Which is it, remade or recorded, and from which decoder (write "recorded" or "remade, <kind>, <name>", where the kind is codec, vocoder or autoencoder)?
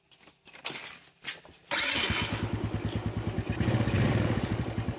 recorded